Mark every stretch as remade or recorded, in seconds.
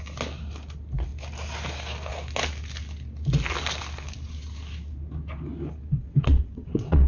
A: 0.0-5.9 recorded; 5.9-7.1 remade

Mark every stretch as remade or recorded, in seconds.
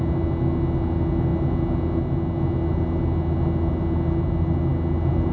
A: 0.0-5.3 recorded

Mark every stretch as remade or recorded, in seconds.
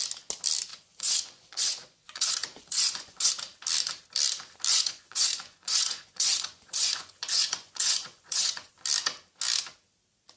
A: 0.0-0.7 recorded; 0.7-3.3 remade; 3.3-4.7 recorded; 4.7-8.7 remade; 8.7-10.4 recorded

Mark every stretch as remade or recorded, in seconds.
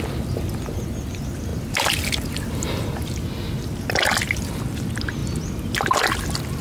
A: 0.0-6.6 recorded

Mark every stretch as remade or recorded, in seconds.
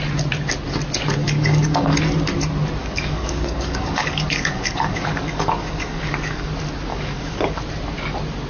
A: 0.0-1.2 recorded; 1.2-2.0 remade; 2.0-2.8 recorded; 2.8-6.5 remade; 6.5-6.9 recorded; 6.9-7.6 remade; 7.6-8.5 recorded